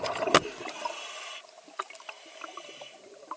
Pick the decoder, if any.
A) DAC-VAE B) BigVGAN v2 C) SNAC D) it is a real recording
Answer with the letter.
D